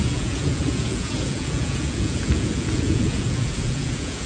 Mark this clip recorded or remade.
remade